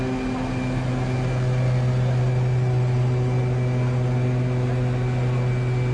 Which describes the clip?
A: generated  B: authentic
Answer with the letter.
B